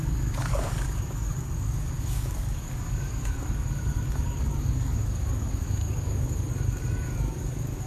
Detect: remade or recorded remade